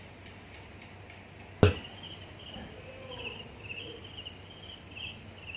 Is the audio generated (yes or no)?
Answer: no